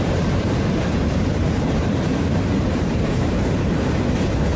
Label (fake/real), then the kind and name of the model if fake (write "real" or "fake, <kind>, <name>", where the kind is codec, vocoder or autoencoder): fake, vocoder, BigVGAN v2